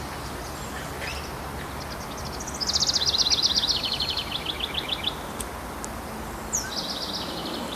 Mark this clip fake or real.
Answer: real